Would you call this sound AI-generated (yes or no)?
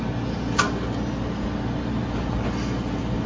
no